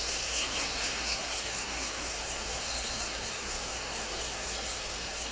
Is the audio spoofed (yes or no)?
yes